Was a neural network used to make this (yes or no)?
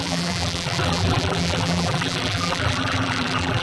yes